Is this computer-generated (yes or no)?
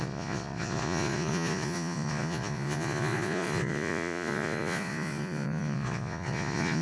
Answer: yes